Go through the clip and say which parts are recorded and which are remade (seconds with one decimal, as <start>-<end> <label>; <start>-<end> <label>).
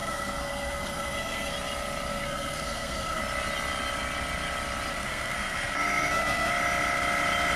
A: 0.0-1.5 remade; 1.5-2.1 recorded; 2.1-3.2 remade; 3.2-4.9 recorded; 4.9-6.5 remade; 6.5-7.6 recorded